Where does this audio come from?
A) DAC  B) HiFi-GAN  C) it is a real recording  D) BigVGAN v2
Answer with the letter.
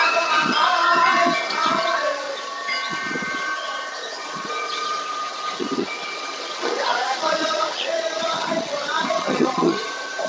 B